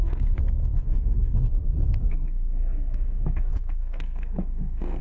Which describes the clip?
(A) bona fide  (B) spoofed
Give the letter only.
B